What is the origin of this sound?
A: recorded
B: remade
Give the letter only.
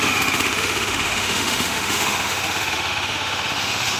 B